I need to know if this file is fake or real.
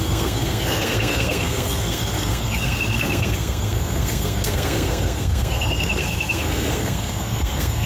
fake